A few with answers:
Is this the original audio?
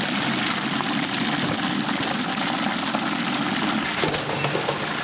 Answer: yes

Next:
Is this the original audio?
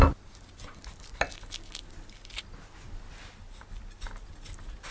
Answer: yes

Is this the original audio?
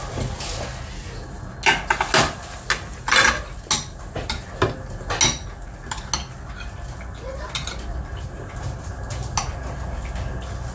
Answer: yes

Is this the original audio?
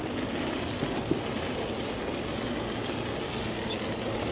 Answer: yes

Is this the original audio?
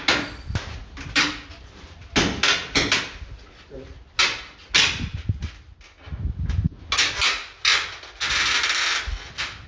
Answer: yes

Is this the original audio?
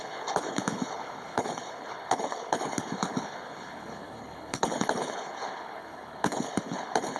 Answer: no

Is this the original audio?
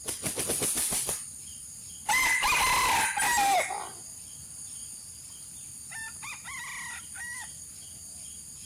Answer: no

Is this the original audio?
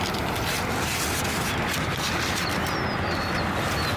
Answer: yes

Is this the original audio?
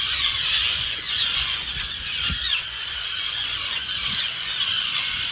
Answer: no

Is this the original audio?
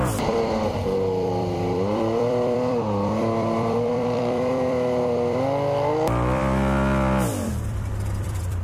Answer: no